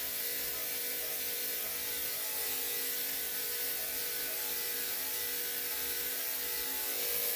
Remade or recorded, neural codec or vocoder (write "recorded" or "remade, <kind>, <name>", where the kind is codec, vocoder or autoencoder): recorded